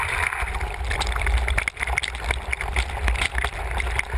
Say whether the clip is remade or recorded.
recorded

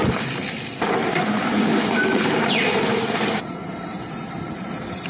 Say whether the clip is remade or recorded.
recorded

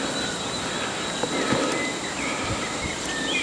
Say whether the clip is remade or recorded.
recorded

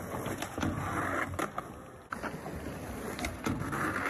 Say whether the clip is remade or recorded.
recorded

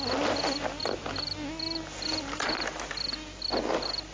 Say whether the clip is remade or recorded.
recorded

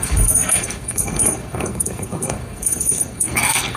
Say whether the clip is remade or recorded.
remade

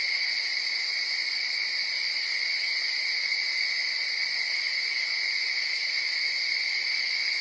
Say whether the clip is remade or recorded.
recorded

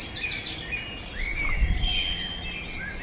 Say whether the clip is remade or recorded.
recorded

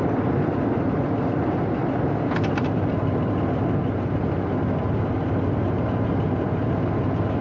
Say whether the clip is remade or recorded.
recorded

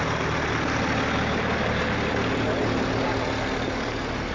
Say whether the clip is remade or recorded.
recorded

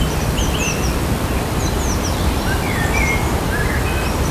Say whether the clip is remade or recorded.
remade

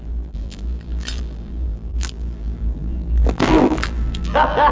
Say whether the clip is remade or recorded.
remade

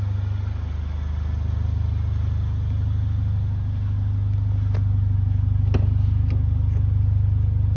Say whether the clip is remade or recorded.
recorded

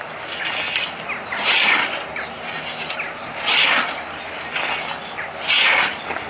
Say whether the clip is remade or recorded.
recorded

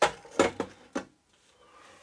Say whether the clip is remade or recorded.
recorded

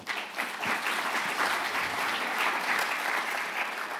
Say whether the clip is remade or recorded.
recorded